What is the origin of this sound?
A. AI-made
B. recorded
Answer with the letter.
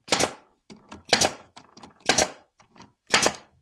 A